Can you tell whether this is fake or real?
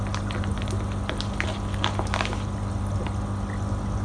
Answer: real